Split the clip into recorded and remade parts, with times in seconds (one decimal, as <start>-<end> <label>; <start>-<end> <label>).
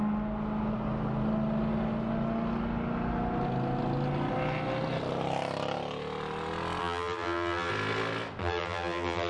0.0-6.8 recorded; 6.8-7.7 remade; 7.7-8.4 recorded; 8.4-9.3 remade